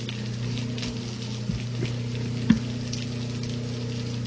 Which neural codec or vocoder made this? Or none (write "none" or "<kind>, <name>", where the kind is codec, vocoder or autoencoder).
none